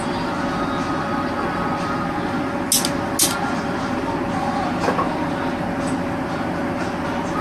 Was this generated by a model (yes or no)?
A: no